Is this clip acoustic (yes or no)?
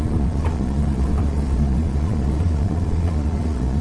no